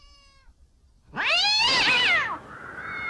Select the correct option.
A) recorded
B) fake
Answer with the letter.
A